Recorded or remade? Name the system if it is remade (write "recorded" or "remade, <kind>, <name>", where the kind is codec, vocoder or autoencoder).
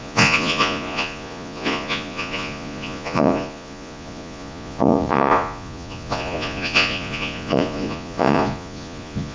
remade, vocoder, Vocos